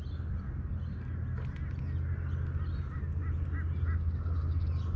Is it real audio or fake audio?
real